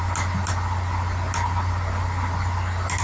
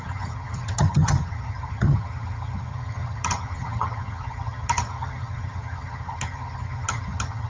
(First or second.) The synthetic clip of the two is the second